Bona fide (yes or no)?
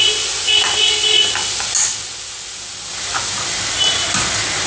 yes